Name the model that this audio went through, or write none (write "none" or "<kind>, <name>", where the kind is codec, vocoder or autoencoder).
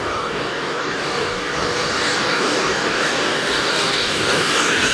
codec, DAC